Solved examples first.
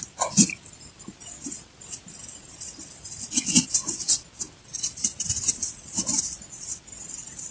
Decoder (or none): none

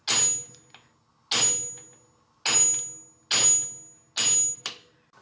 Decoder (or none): none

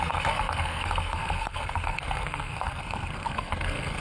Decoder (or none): codec, SNAC